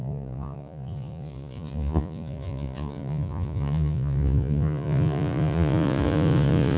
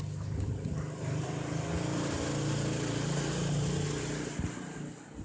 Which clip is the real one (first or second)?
second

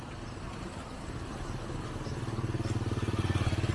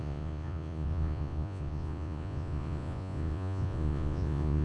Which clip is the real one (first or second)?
first